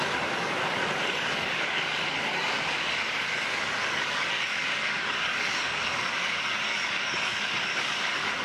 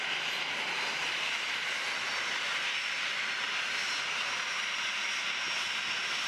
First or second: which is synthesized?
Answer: first